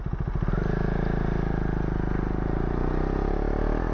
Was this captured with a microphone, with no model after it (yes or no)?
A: yes